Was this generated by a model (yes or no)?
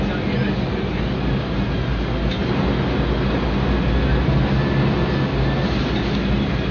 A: no